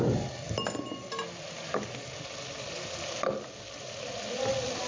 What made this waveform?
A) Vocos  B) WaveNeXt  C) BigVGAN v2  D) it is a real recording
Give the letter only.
D